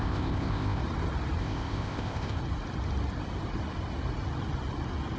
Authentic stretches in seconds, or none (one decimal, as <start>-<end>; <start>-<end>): 0.8-1.4; 2.4-5.2